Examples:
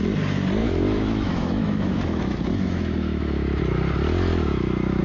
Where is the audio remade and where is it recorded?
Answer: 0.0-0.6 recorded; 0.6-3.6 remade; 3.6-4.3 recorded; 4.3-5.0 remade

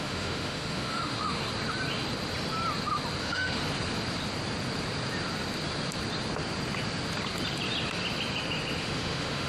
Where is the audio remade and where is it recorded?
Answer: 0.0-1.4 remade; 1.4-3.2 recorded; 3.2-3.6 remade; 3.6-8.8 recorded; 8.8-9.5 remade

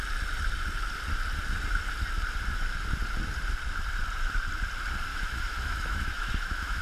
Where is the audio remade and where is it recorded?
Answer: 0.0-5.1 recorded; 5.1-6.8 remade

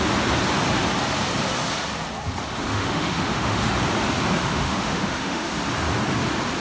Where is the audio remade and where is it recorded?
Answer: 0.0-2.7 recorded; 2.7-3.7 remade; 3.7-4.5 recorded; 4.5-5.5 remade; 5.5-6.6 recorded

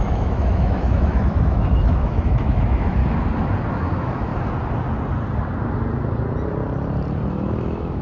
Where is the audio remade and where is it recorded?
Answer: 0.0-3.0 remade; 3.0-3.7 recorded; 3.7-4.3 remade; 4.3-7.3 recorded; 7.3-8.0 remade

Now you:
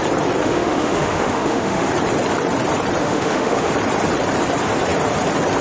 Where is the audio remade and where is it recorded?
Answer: 0.0-0.4 recorded; 0.4-1.9 remade; 1.9-3.0 recorded; 3.0-3.7 remade; 3.7-5.6 recorded

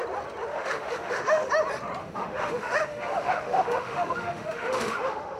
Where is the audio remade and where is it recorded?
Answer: 0.0-0.5 recorded; 0.5-1.5 remade; 1.5-2.0 recorded; 2.0-5.4 remade

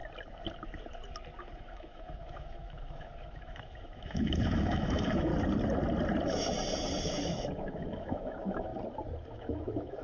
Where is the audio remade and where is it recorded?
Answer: 0.0-1.4 recorded; 1.4-5.3 remade; 5.3-7.0 recorded; 7.0-8.7 remade; 8.7-9.3 recorded; 9.3-10.0 remade